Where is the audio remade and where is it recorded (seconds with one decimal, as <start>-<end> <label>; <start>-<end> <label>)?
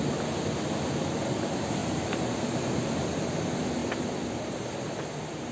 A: 0.0-5.5 recorded